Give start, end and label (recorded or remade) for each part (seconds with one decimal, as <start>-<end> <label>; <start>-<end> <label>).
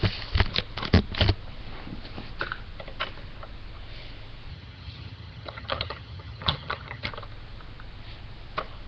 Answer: 0.0-4.5 recorded; 4.5-7.1 remade; 7.1-8.9 recorded